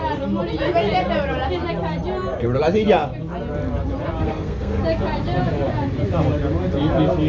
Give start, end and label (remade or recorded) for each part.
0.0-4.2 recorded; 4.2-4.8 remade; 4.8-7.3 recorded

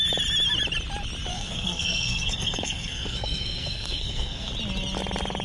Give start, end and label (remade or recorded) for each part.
0.0-1.3 recorded; 1.3-4.5 remade; 4.5-5.4 recorded

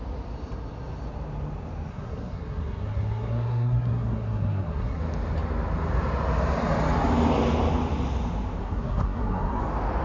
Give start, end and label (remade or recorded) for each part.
0.0-1.9 recorded; 1.9-5.0 remade; 5.0-8.6 recorded; 8.6-9.6 remade; 9.6-10.0 recorded

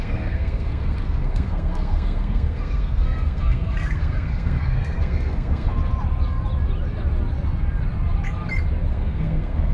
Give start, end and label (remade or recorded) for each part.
0.0-5.8 remade; 5.8-8.9 recorded; 8.9-9.7 remade

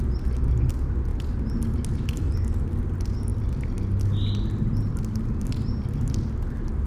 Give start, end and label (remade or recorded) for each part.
0.0-6.9 recorded

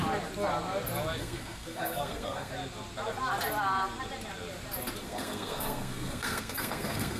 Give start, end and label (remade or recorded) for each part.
0.0-1.2 recorded; 1.2-2.5 remade; 2.5-5.0 recorded; 5.0-7.2 remade

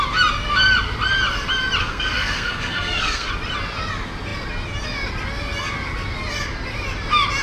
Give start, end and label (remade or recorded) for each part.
0.0-1.8 recorded; 1.8-3.3 remade; 3.3-7.4 recorded